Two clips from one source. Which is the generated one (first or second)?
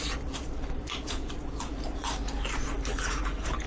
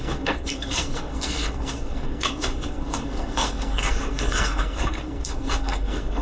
second